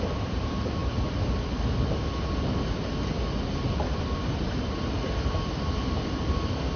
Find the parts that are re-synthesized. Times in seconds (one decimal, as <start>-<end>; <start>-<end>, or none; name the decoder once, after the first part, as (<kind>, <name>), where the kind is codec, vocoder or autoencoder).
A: none